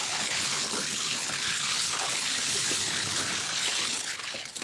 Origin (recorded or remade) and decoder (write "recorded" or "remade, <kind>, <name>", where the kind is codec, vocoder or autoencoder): remade, codec, HILCodec